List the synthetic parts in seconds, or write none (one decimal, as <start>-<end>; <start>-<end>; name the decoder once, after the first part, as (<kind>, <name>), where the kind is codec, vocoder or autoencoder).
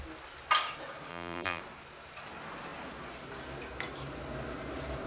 1.1-1.6 (vocoder, BigVGAN v2)